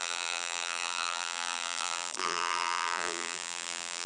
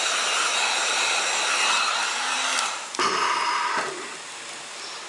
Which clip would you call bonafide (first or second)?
second